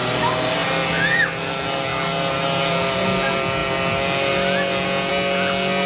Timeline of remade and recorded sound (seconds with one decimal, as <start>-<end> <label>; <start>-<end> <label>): 0.0-5.9 recorded